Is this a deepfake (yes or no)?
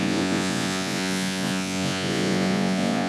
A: yes